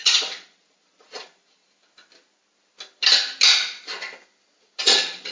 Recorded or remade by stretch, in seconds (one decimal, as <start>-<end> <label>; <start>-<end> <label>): 0.0-1.6 remade; 1.6-4.8 recorded; 4.8-5.3 remade